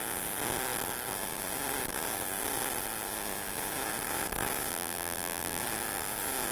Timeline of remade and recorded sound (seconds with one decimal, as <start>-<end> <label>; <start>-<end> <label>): 0.0-4.7 recorded; 4.7-5.6 remade; 5.6-6.5 recorded